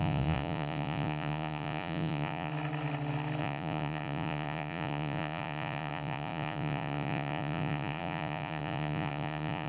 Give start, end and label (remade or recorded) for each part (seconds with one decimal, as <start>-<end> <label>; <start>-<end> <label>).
0.0-2.5 remade; 2.5-3.4 recorded; 3.4-9.7 remade